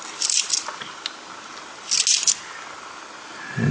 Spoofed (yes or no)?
no